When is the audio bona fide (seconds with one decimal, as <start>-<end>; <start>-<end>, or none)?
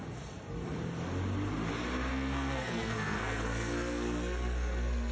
0.0-2.1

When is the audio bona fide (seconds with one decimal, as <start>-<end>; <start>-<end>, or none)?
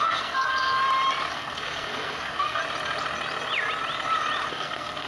0.8-1.3; 2.6-4.5